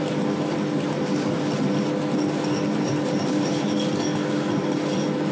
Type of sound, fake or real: real